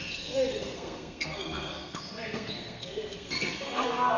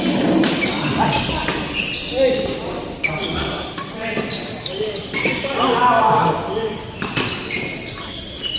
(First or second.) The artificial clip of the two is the first